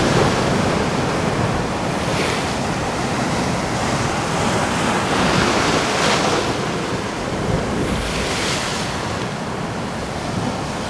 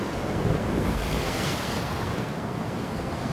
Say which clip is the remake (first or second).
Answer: second